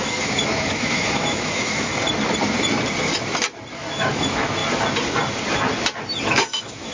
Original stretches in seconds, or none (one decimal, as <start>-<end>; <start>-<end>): 1.9-3.7; 4.6-6.2